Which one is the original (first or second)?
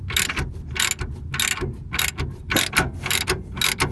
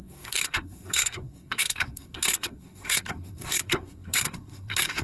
first